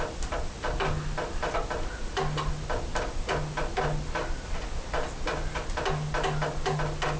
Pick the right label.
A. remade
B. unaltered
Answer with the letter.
B